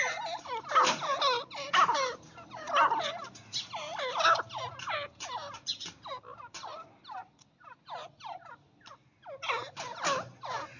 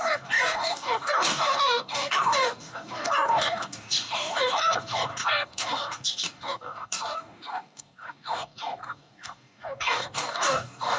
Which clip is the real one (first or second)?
first